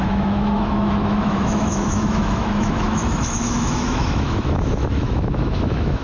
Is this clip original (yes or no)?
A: no